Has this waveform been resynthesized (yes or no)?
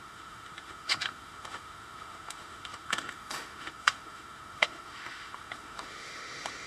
yes